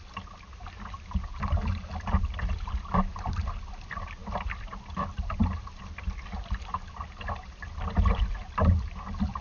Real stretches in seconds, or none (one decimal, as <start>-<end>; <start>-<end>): 0.0-9.4